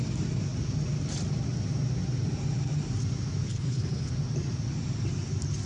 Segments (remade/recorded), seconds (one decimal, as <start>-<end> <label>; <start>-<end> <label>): 0.0-3.5 recorded; 3.5-4.1 remade; 4.1-5.7 recorded